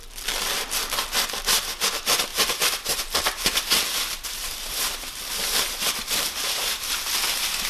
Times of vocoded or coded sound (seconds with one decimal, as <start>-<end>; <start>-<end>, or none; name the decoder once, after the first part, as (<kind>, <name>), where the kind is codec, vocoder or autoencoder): 2.3-6.9 (vocoder, BigVGAN v2)